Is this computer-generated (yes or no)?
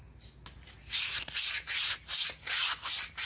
no